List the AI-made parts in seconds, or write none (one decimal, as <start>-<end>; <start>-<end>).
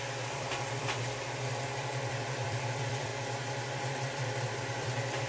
0.0-3.1; 3.8-5.3